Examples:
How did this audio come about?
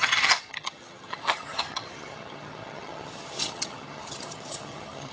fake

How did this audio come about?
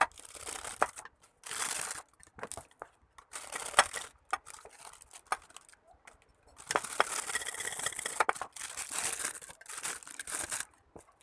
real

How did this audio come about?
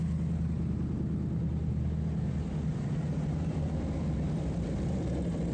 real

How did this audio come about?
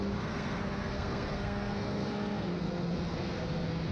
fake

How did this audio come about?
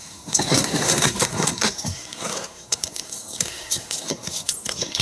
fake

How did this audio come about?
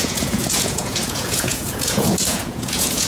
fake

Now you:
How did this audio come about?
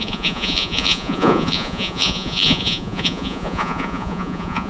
fake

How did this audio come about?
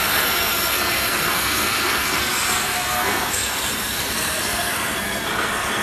fake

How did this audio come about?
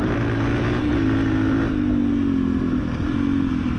real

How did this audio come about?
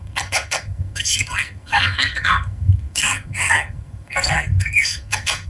fake